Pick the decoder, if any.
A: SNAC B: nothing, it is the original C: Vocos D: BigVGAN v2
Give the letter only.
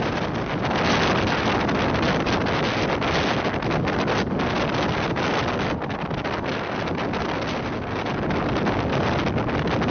B